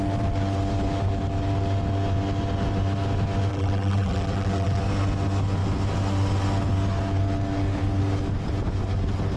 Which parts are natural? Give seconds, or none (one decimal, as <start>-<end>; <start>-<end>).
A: 0.0-3.5; 4.8-9.4